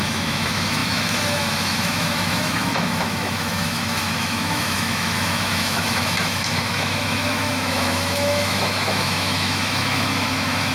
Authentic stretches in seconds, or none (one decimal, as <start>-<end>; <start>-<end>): none